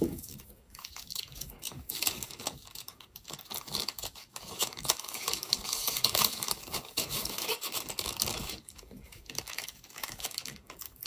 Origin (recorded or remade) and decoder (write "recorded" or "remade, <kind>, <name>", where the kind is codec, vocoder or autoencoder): remade, codec, DAC